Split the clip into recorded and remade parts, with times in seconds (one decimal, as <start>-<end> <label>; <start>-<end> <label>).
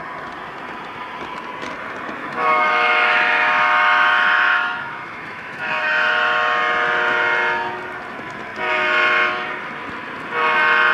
0.0-2.2 recorded; 2.2-6.6 remade; 6.6-10.9 recorded